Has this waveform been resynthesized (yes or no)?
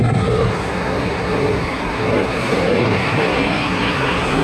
yes